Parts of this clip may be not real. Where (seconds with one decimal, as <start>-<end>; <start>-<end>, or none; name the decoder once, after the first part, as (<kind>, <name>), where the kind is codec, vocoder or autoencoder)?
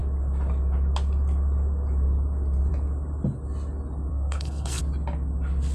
4.1-4.8 (codec, SNAC)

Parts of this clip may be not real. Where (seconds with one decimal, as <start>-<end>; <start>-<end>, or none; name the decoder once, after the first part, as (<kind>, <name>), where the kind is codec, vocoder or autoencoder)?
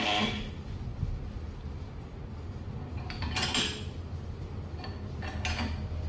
none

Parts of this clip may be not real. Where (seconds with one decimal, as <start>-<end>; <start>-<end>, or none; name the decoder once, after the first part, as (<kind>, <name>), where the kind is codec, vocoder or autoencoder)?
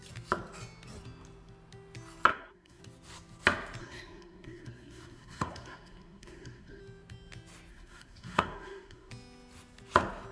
2.3-2.8 (codec, SNAC); 3.8-6.8; 7.7-9.1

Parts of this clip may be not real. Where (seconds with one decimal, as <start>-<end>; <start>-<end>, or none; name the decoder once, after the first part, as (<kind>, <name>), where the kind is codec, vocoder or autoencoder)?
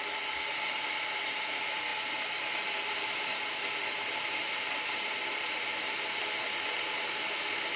none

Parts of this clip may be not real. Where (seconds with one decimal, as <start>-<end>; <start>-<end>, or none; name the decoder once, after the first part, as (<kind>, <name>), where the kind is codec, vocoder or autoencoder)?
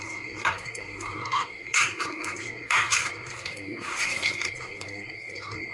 0.0-5.7 (codec, SNAC)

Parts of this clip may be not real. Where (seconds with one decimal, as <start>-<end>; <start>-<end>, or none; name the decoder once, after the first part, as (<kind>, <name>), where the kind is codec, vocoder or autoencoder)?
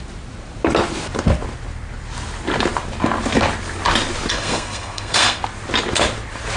4.3-5.4 (codec, SNAC)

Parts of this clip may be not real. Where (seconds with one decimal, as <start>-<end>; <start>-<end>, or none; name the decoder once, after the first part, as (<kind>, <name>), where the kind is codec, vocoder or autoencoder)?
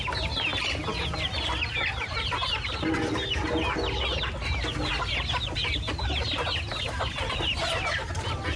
none